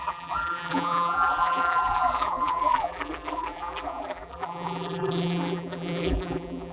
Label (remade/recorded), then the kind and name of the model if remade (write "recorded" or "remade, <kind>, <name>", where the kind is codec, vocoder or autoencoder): remade, vocoder, BigVGAN v2